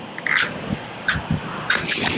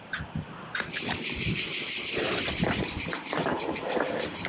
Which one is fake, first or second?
second